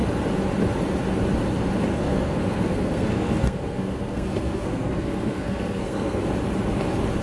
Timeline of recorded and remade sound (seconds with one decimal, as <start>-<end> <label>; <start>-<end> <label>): 0.0-1.9 recorded; 1.9-6.2 remade; 6.2-7.2 recorded